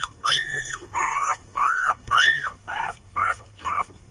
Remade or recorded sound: remade